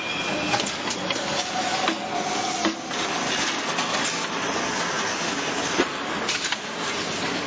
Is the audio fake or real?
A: real